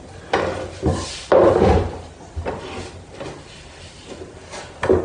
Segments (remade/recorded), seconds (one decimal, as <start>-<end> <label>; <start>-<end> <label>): 0.0-0.9 recorded; 0.9-2.6 remade; 2.6-5.0 recorded